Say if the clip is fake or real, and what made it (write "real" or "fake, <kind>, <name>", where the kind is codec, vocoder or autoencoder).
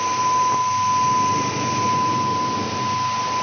real